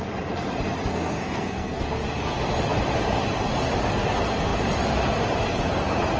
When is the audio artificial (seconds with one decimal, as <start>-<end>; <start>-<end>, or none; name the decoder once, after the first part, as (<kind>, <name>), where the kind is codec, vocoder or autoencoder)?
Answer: 0.9-1.8 (codec, SNAC)